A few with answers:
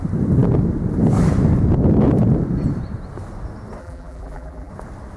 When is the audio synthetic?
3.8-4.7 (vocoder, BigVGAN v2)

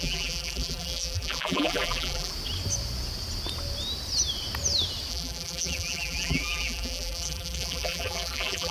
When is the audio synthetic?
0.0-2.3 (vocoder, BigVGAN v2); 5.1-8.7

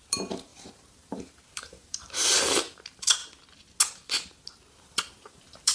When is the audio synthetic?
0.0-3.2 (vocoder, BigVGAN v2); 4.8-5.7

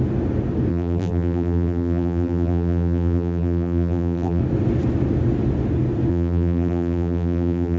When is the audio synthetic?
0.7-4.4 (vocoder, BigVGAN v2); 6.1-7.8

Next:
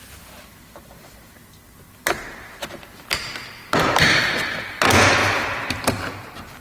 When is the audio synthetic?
3.6-4.2 (vocoder, BigVGAN v2); 5.2-6.0

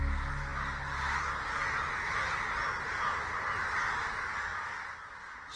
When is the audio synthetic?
none

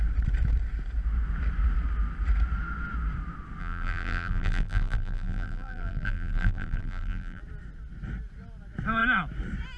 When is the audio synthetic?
3.6-7.4 (vocoder, BigVGAN v2)